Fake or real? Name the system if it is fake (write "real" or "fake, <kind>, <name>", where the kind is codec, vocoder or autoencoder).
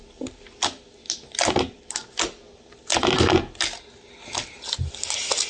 real